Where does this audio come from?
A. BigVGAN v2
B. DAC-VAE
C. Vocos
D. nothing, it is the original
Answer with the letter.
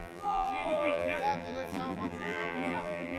A